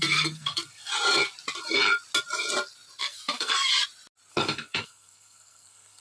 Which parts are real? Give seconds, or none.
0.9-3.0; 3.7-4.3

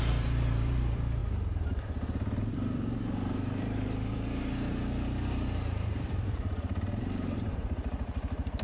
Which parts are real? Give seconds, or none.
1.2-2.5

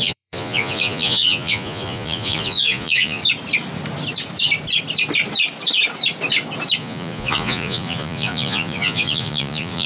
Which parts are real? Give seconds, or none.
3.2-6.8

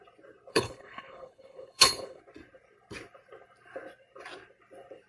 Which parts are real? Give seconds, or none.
0.0-0.5; 2.2-5.1

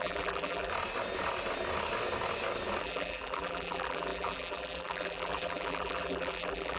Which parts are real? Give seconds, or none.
0.7-2.8